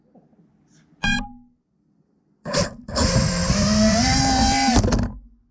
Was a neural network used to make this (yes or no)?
no